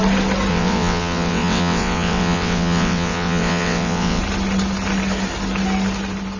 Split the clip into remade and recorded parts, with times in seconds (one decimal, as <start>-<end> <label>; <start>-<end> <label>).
0.0-0.5 recorded; 0.5-4.2 remade; 4.2-6.4 recorded